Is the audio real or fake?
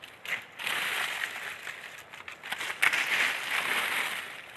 real